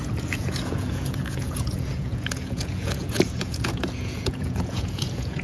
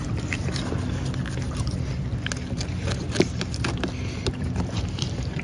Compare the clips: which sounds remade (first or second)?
first